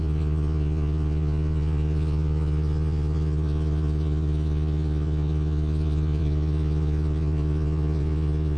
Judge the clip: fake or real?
fake